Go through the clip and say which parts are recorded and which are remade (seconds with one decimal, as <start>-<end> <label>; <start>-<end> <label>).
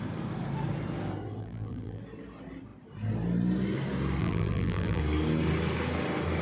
0.0-1.4 recorded; 1.4-2.0 remade; 2.0-4.2 recorded; 4.2-5.0 remade; 5.0-6.4 recorded